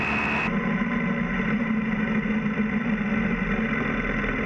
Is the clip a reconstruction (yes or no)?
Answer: no